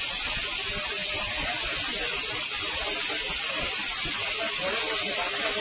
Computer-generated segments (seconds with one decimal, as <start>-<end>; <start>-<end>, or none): none